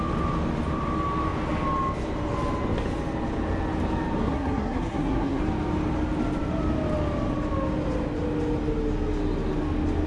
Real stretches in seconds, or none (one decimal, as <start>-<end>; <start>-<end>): 0.0-4.2; 5.4-10.1